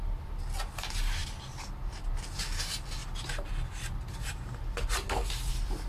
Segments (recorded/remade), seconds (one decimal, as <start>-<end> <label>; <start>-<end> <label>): 0.0-5.9 recorded